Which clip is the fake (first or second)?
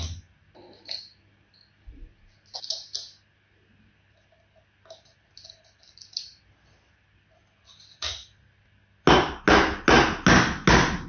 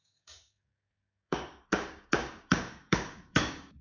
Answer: second